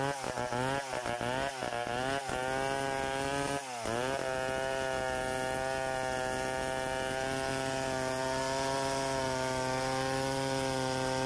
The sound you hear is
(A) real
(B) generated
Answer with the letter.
A